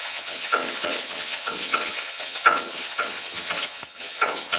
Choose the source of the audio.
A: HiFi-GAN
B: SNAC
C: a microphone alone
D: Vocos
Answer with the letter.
A